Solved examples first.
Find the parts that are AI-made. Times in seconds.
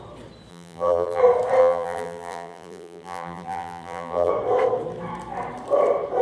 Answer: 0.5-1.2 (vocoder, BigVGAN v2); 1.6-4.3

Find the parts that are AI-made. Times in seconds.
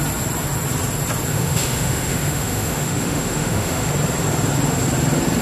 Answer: 1.3-3.9 (autoencoder, DAC-VAE)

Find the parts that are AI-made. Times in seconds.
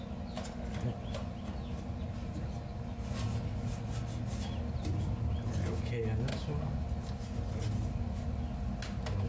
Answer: 6.3-7.1 (vocoder, BigVGAN v2)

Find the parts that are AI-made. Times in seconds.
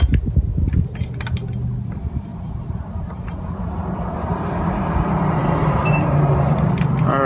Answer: 2.3-6.7 (vocoder, BigVGAN v2)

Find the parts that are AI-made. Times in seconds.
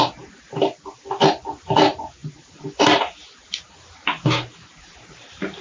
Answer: none